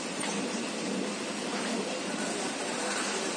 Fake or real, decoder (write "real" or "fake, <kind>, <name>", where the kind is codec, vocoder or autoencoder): real